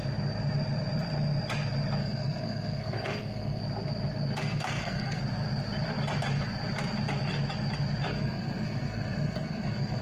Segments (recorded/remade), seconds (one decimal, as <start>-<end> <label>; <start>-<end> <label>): 0.0-2.0 recorded; 2.0-3.6 remade; 3.6-4.4 recorded; 4.4-5.2 remade; 5.2-8.1 recorded; 8.1-10.0 remade